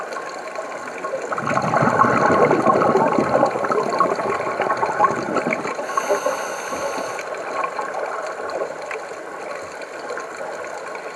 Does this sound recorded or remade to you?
recorded